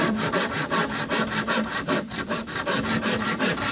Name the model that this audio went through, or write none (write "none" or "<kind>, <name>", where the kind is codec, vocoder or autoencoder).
vocoder, BigVGAN v2